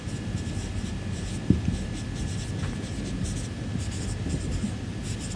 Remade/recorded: recorded